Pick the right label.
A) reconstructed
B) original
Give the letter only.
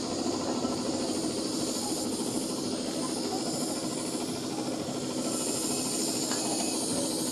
B